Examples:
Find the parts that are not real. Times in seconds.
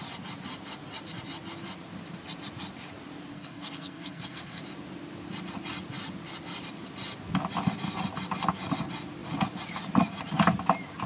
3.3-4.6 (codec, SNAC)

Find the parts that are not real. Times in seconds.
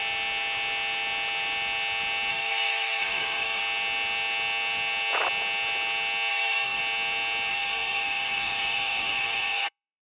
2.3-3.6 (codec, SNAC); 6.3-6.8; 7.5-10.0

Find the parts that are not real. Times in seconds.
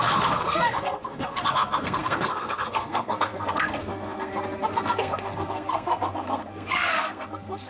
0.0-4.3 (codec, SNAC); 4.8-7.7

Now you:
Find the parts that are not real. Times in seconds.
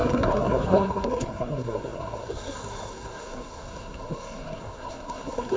0.0-5.6 (codec, SNAC)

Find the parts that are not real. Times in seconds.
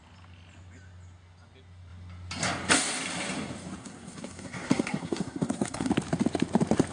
3.8-5.9 (codec, SNAC)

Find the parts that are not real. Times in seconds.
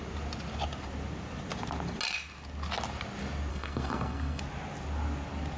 3.5-4.4 (codec, SNAC)